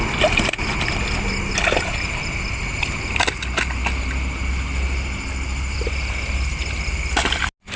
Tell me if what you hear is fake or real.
real